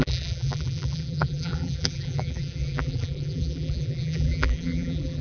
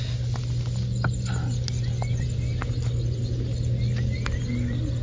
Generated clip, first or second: first